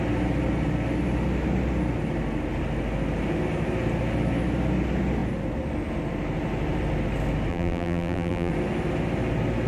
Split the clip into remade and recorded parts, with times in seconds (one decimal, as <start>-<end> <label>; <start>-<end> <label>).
0.0-7.5 recorded; 7.5-8.5 remade; 8.5-9.7 recorded